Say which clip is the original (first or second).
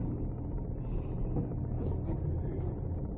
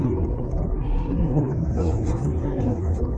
first